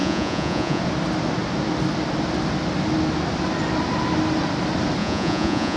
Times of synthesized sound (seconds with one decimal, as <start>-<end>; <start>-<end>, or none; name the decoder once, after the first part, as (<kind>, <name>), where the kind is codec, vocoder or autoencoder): 0.0-0.8 (vocoder, Vocos); 5.0-5.8